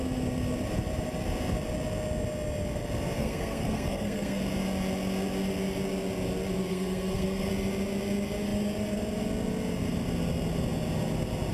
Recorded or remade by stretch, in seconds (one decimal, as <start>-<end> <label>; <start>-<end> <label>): 0.0-3.2 recorded; 3.2-4.4 remade; 4.4-6.7 recorded; 6.7-7.5 remade; 7.5-11.5 recorded